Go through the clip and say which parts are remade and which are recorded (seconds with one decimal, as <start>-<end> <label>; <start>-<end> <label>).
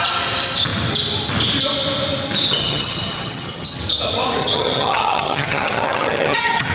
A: 0.0-2.6 recorded; 2.6-3.8 remade; 3.8-4.4 recorded; 4.4-6.7 remade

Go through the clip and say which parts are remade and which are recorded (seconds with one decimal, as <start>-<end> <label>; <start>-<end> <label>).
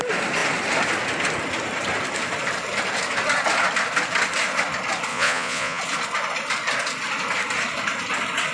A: 0.0-5.1 recorded; 5.1-5.8 remade; 5.8-8.5 recorded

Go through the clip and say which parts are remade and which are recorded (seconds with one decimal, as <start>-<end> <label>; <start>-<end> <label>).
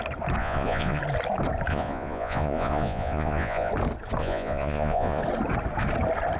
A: 0.0-0.4 recorded; 0.4-1.0 remade; 1.0-1.7 recorded; 1.7-3.7 remade; 3.7-4.2 recorded; 4.2-5.2 remade; 5.2-6.4 recorded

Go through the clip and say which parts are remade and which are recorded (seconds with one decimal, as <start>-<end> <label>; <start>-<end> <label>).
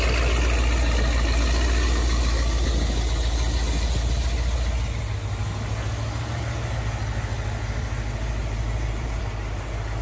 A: 0.0-8.4 recorded; 8.4-9.2 remade; 9.2-10.0 recorded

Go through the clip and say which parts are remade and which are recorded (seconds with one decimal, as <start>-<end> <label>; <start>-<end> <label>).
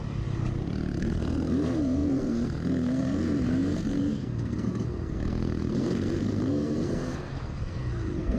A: 0.0-1.0 recorded; 1.0-8.4 remade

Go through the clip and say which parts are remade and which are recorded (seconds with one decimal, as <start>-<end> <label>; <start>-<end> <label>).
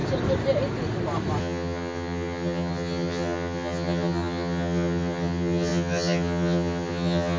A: 0.0-1.4 recorded; 1.4-7.4 remade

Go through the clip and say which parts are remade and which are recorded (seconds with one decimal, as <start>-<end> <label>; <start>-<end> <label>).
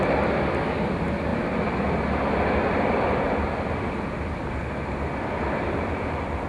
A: 0.0-6.5 recorded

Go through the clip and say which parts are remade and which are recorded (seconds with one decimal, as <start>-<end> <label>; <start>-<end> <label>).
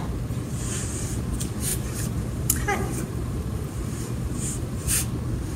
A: 0.0-1.7 recorded; 1.7-4.9 remade; 4.9-5.6 recorded